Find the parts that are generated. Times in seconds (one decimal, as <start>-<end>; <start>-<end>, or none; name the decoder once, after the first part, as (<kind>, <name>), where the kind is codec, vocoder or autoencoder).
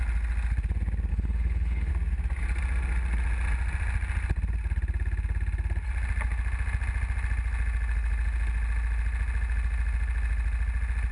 1.1-1.9 (codec, HILCodec)